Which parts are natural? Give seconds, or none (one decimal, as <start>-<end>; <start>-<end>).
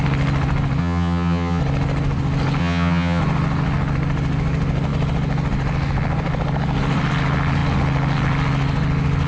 0.0-0.8; 1.6-2.6; 3.2-9.3